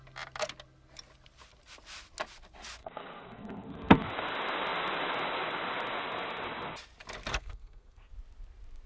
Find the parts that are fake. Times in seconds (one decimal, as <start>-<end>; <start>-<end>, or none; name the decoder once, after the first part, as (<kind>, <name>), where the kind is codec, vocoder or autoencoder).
2.8-4.1 (codec, SNAC); 7.3-8.1